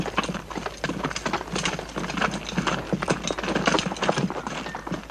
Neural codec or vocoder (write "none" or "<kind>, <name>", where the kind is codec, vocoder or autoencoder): none